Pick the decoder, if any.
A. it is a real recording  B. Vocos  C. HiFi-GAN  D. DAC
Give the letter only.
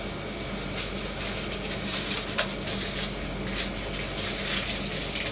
A